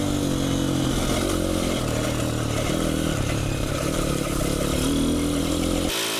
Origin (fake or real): real